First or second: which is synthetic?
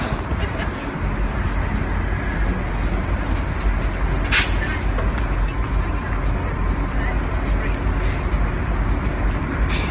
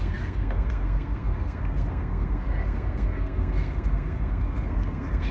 second